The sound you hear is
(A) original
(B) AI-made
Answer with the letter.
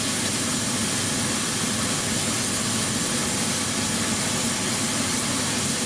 A